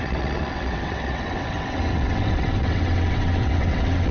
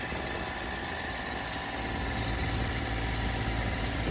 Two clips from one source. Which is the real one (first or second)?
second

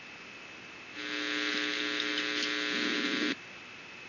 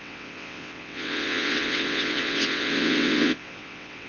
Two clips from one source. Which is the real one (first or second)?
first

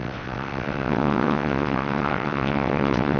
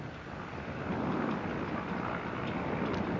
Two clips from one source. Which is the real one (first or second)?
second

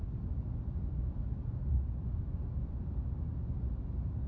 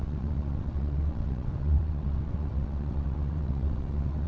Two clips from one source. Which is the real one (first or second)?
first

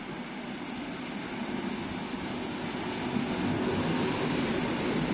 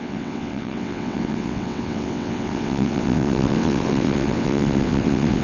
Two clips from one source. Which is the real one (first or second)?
first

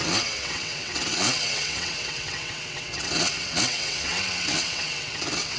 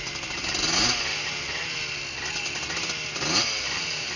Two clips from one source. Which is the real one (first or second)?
second